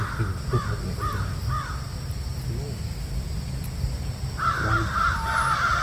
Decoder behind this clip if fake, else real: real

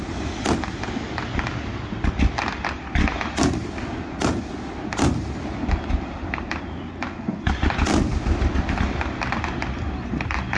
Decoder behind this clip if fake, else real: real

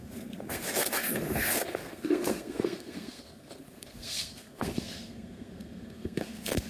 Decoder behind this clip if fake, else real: fake, codec, SNAC